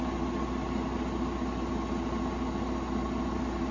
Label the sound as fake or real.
real